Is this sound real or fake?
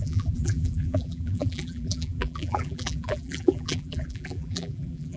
fake